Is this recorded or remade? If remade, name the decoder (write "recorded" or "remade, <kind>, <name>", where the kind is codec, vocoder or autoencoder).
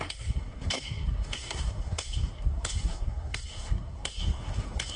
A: remade, codec, SNAC